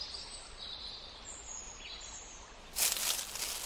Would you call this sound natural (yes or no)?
yes